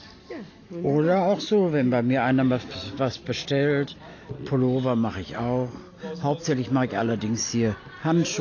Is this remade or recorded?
recorded